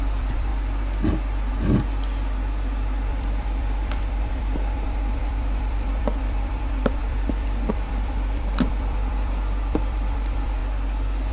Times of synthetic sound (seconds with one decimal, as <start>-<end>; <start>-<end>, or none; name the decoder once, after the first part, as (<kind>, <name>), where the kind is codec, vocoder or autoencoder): 0.0-0.5 (vocoder, BigVGAN v2); 3.1-10.6